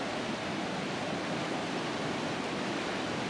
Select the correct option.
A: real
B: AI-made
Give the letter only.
A